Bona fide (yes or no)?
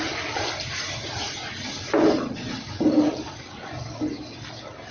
yes